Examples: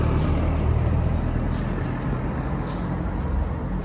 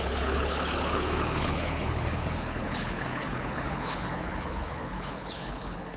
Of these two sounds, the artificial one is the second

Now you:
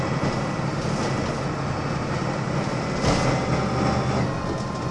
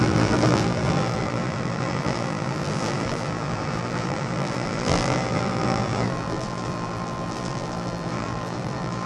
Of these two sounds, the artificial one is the second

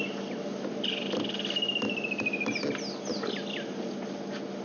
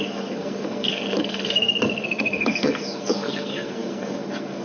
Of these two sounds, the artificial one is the second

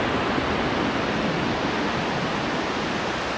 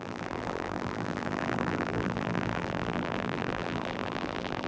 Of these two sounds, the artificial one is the second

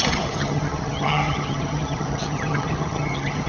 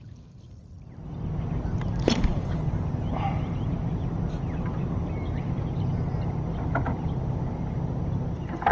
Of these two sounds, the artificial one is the first